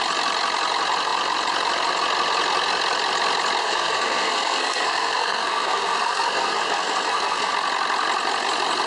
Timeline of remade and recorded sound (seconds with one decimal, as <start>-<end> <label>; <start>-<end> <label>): 0.0-3.6 recorded; 3.6-7.5 remade; 7.5-8.9 recorded